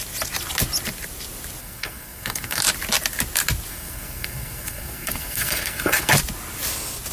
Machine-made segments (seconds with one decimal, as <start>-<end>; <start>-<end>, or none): 1.6-2.6; 3.7-6.1